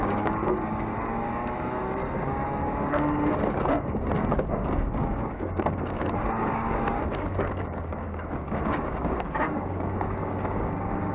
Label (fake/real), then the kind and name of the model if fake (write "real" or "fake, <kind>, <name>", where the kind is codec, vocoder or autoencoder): fake, codec, DAC